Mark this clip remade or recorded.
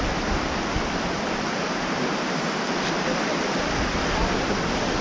recorded